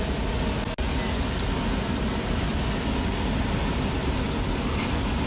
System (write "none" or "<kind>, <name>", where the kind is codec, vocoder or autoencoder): none